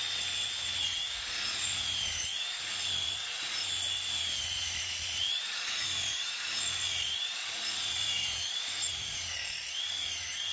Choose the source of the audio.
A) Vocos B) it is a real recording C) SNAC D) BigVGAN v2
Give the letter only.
A